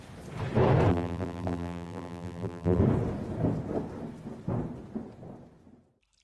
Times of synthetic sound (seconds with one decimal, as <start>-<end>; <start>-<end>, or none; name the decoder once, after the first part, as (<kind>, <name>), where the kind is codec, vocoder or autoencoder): 0.9-2.8 (vocoder, BigVGAN v2)